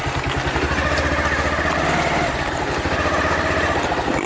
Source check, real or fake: real